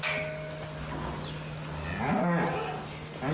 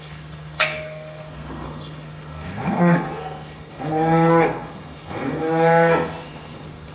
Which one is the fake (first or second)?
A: second